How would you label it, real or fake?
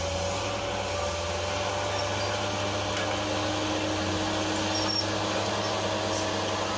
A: real